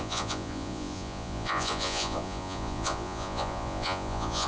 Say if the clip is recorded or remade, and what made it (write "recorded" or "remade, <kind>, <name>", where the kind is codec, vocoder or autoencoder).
remade, vocoder, Vocos